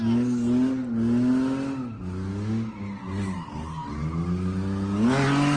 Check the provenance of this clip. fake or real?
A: real